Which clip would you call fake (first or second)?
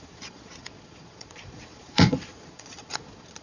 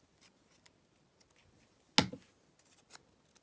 first